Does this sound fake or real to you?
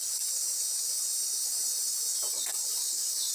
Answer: real